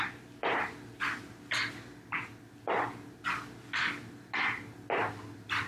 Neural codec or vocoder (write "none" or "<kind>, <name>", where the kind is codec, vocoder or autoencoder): none